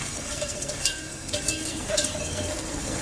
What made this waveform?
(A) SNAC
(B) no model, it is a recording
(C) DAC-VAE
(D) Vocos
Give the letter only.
A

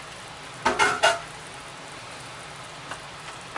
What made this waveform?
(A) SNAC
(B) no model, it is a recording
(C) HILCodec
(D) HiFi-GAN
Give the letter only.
B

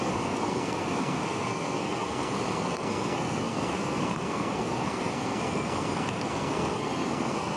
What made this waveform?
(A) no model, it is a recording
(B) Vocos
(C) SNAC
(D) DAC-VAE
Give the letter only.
C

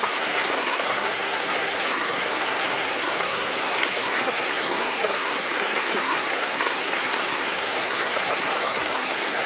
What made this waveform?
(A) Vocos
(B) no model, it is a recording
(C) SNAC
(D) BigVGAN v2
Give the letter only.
C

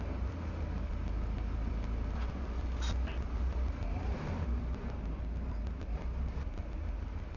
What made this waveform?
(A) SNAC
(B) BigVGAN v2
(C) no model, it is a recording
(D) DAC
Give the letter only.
C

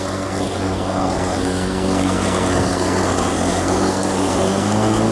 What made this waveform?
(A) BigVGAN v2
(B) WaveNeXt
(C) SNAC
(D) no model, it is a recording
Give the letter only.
C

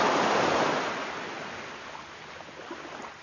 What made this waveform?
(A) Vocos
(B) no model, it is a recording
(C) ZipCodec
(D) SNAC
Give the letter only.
B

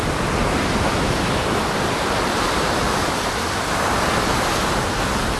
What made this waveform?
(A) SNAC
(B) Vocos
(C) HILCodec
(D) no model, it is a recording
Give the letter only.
D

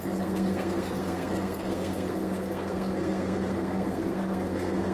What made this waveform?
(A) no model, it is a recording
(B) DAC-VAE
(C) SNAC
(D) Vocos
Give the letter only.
C